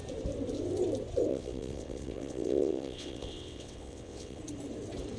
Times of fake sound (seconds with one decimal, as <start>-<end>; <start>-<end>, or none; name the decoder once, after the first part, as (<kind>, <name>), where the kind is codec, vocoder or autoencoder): 1.3-4.4 (vocoder, WaveNeXt)